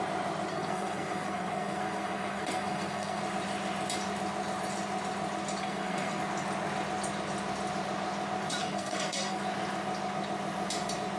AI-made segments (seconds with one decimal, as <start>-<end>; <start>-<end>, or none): 0.5-3.2; 5.6-6.2; 8.6-9.4